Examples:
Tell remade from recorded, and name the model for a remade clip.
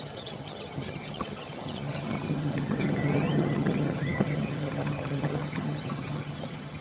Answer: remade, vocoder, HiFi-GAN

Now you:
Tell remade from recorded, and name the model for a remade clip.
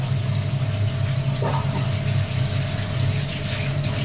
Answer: recorded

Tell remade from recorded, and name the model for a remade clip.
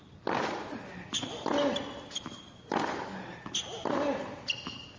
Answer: recorded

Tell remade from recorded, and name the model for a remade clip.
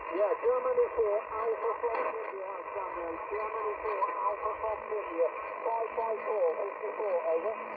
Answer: recorded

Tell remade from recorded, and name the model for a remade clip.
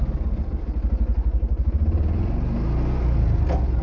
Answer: recorded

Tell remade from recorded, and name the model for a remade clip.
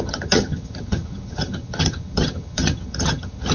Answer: remade, vocoder, HiFi-GAN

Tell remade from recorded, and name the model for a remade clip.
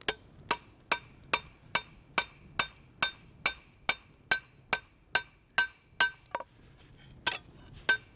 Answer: recorded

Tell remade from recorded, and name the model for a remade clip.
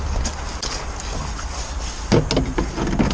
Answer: recorded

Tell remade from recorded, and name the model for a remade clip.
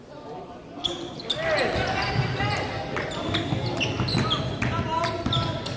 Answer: recorded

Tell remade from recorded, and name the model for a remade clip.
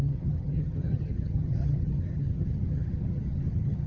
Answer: remade, vocoder, HiFi-GAN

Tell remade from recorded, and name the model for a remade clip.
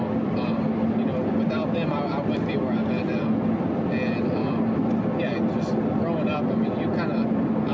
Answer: recorded